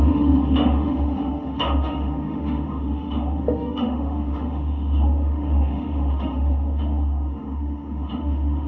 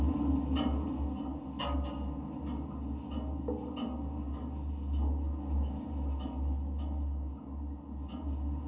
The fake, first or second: first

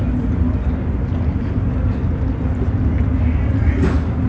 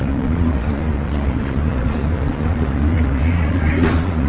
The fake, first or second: second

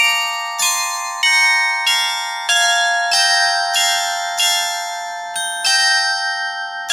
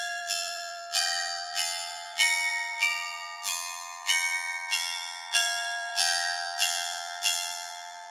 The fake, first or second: second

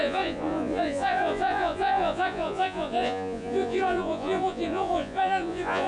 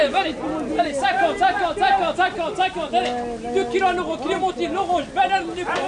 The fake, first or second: first